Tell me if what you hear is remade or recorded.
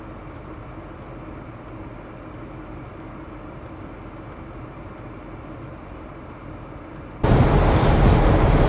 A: recorded